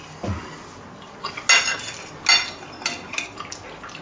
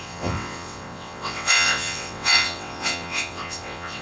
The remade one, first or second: second